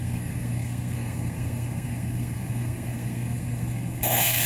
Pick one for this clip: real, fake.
fake